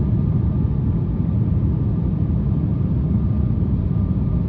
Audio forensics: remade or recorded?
remade